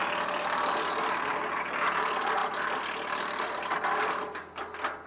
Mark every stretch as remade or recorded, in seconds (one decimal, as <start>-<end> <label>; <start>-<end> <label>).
0.0-5.1 recorded

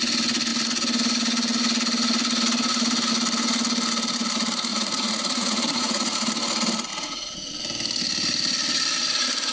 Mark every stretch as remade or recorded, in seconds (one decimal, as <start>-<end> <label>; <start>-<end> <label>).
0.0-4.7 recorded; 4.7-6.3 remade; 6.3-6.9 recorded; 6.9-7.5 remade; 7.5-9.5 recorded

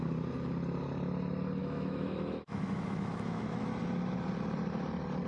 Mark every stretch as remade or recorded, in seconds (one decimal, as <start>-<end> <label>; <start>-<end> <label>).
0.0-1.6 recorded; 1.6-3.8 remade; 3.8-5.3 recorded

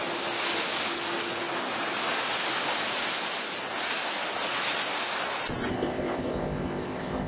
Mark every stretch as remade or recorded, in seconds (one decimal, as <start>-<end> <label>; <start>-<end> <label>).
0.0-5.7 recorded; 5.7-7.3 remade

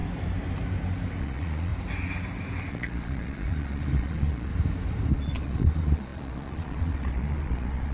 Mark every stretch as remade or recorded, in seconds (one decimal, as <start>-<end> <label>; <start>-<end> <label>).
0.0-1.2 recorded; 1.2-1.7 remade; 1.7-2.7 recorded; 2.7-4.5 remade; 4.5-5.1 recorded; 5.1-7.9 remade

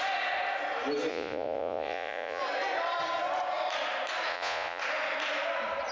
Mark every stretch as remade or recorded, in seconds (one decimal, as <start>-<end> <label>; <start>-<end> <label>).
0.0-1.1 recorded; 1.1-2.4 remade; 2.4-4.3 recorded; 4.3-4.8 remade; 4.8-5.9 recorded